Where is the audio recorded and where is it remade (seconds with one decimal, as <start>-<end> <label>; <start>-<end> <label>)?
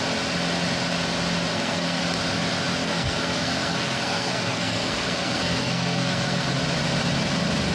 0.0-1.5 recorded; 1.5-2.0 remade; 2.0-2.8 recorded; 2.8-6.6 remade; 6.6-7.7 recorded